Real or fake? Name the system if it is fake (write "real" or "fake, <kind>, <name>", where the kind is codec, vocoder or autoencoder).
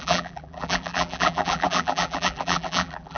fake, vocoder, BigVGAN v2